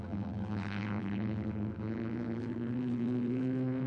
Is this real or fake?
fake